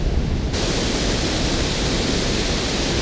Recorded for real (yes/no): yes